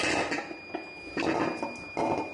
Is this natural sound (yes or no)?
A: yes